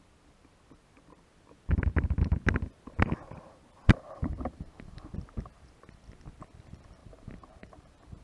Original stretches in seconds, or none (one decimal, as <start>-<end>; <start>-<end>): 0.0-3.8; 5.1-7.0